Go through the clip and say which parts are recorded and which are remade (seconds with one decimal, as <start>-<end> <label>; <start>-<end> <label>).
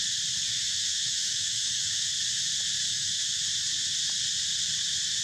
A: 0.0-0.5 recorded; 0.5-2.1 remade; 2.1-2.9 recorded; 2.9-3.4 remade; 3.4-5.2 recorded